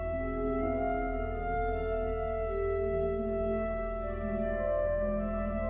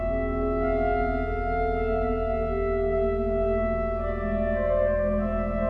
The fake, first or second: first